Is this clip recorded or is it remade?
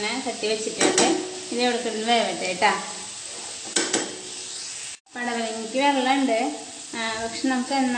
recorded